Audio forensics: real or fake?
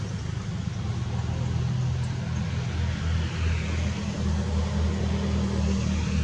real